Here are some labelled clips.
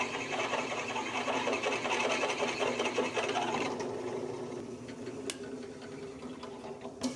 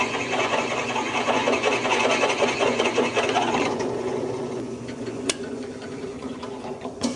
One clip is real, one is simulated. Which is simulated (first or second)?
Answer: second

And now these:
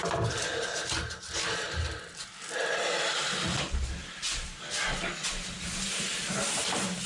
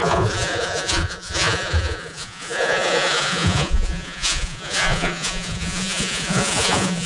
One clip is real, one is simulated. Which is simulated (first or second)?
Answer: second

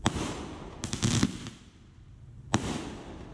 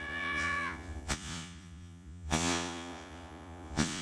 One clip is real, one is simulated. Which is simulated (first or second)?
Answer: second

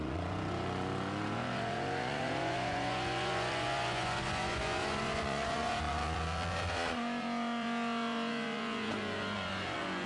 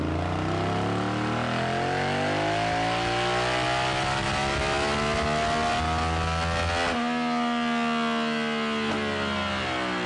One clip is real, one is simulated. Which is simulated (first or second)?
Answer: first